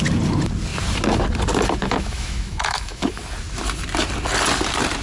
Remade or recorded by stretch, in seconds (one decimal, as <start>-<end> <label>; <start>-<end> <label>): 0.0-1.8 recorded; 1.8-3.2 remade; 3.2-5.0 recorded